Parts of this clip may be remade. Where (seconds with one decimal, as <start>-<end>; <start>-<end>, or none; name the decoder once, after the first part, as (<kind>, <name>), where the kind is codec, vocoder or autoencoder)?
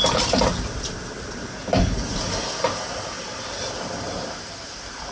0.0-1.6 (vocoder, BigVGAN v2)